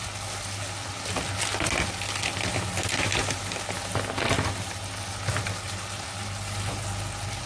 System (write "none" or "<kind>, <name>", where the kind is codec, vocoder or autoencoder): none